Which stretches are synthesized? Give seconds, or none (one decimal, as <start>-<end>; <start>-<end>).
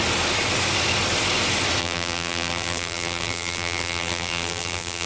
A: 1.8-5.1